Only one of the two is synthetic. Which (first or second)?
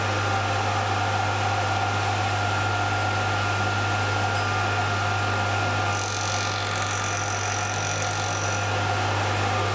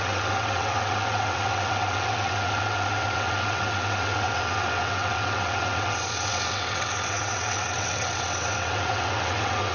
second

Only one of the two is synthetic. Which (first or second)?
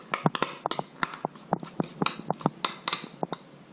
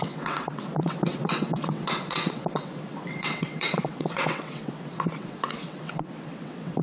second